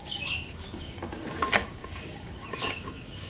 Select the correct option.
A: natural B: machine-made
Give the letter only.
B